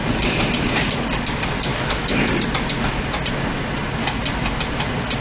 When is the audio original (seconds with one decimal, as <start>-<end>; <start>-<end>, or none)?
0.0-1.7; 2.2-5.2